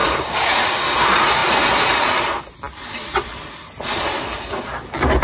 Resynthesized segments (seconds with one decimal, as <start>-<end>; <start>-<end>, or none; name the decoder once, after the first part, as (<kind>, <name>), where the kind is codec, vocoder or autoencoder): 0.0-0.8 (codec, DAC)